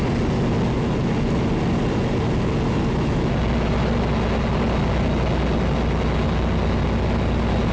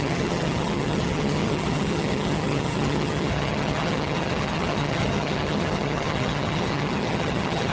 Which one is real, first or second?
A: first